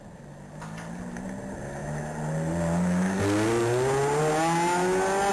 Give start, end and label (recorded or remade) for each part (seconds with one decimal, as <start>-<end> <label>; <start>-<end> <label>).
0.0-5.3 recorded

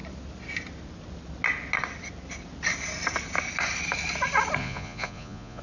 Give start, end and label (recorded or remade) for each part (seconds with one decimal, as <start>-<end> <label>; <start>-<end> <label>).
0.0-4.6 recorded; 4.6-5.6 remade

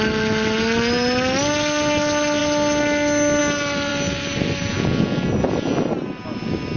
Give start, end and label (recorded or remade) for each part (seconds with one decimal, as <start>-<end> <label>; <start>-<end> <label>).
0.0-6.8 recorded

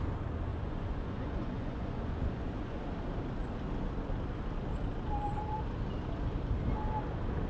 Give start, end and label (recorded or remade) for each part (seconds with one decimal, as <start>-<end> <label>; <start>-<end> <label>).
0.0-0.5 recorded; 0.5-2.8 remade; 2.8-7.5 recorded

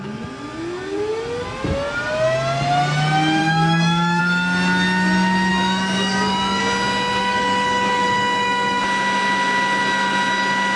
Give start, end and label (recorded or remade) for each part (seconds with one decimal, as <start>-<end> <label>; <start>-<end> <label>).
0.0-3.4 recorded; 3.4-4.2 remade; 4.2-5.5 recorded; 5.5-6.6 remade; 6.6-7.2 recorded; 7.2-8.8 remade; 8.8-10.8 recorded